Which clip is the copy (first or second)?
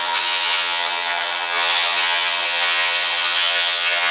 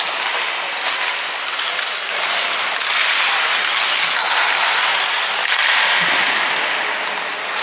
first